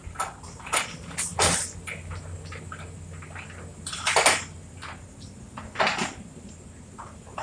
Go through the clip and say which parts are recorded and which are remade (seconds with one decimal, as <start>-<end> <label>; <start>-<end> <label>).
0.0-7.4 recorded

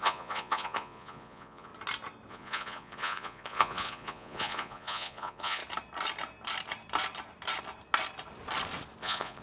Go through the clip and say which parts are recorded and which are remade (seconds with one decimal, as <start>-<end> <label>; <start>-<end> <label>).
0.0-1.7 remade; 1.7-2.3 recorded; 2.3-5.6 remade; 5.6-9.0 recorded; 9.0-9.4 remade

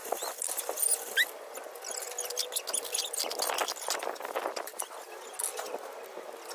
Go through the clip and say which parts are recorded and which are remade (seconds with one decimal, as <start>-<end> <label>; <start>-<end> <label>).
0.0-6.5 recorded

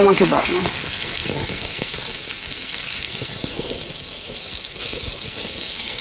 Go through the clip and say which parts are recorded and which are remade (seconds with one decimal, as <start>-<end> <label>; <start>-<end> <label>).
0.0-6.0 remade

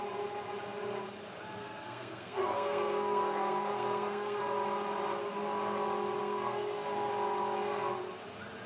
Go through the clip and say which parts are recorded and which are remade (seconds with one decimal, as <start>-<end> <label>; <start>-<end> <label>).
0.0-1.6 recorded; 1.6-4.4 remade; 4.4-6.2 recorded; 6.2-7.1 remade; 7.1-8.7 recorded

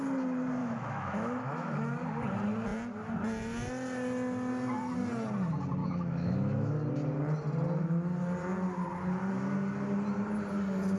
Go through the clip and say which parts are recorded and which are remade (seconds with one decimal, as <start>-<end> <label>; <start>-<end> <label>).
0.0-0.6 recorded; 0.6-1.7 remade; 1.7-5.8 recorded; 5.8-6.7 remade; 6.7-11.0 recorded

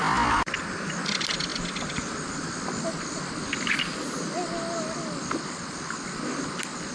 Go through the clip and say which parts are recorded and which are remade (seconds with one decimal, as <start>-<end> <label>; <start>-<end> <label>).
0.0-6.9 recorded